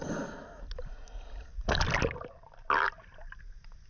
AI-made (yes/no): no